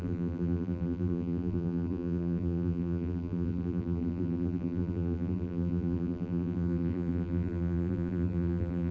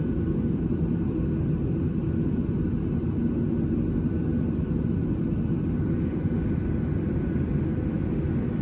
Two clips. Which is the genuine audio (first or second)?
second